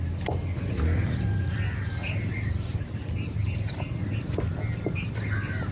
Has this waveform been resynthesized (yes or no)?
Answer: no